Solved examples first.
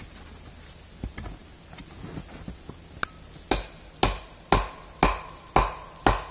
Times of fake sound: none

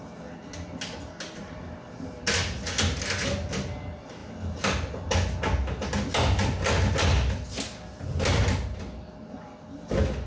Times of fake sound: none

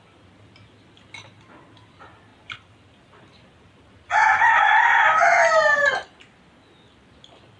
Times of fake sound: none

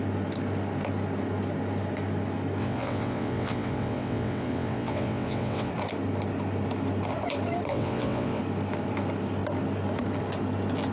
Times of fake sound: 2.6-5.7; 7.7-8.4